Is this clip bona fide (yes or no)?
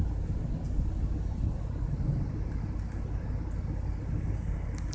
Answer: yes